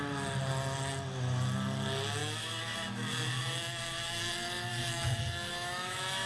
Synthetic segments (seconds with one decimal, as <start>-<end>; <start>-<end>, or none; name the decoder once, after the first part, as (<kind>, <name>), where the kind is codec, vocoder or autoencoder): 2.2-4.2 (autoencoder, DAC-VAE); 4.7-6.3